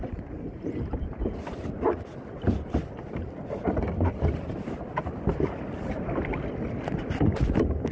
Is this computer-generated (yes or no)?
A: no